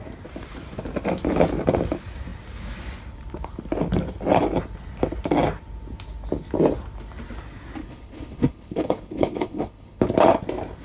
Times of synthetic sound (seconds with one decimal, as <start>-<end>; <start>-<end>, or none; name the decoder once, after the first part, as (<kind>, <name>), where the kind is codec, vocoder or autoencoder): 7.8-10.0 (codec, HILCodec)